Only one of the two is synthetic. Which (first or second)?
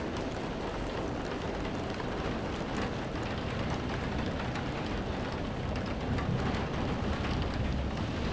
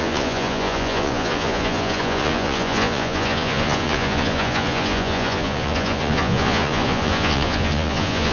second